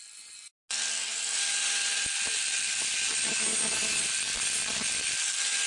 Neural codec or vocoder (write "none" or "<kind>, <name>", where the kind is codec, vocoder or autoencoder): none